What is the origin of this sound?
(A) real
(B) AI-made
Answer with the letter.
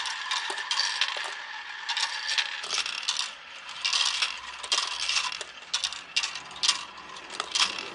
A